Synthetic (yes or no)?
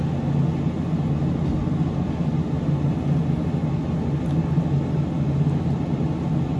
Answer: no